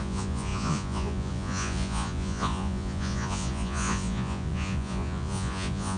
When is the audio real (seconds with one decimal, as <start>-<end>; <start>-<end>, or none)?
none